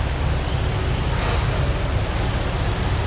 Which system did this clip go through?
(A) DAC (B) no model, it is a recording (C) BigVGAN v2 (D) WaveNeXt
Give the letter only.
B